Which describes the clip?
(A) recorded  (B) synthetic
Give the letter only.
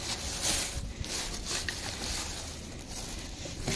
A